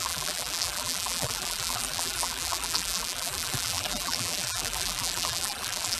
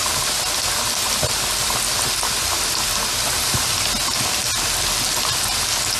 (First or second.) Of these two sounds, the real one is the second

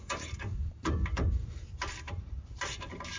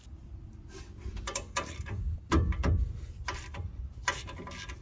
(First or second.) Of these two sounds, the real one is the second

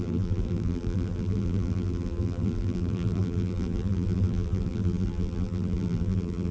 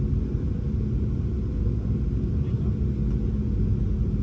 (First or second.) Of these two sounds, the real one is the second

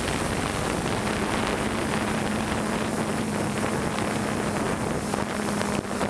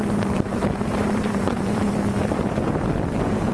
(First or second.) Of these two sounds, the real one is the first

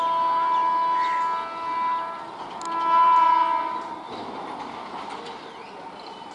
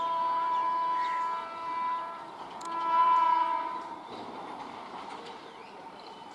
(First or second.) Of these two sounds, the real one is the first